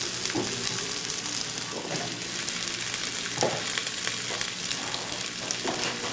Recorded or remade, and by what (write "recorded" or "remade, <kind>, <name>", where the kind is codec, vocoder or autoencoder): recorded